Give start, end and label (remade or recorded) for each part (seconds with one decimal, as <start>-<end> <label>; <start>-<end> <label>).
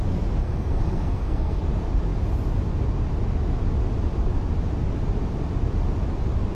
0.0-0.4 recorded; 0.4-1.6 remade; 1.6-6.5 recorded